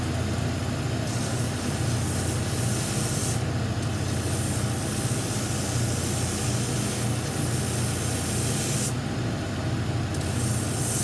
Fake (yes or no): no